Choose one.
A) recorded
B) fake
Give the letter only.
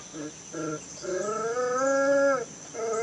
A